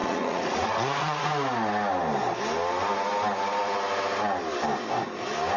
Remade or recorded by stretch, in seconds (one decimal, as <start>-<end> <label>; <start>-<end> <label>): 0.0-1.3 remade; 1.3-5.6 recorded